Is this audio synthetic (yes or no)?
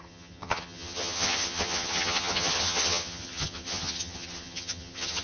yes